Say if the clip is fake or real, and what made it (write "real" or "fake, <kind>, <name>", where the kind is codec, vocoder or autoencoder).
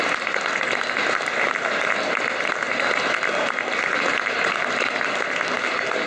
real